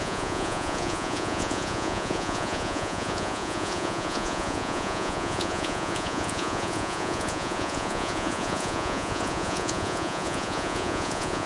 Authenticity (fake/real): fake